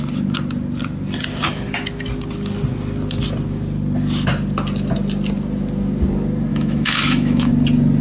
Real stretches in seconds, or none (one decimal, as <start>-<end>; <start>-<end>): 0.0-6.5; 7.5-8.0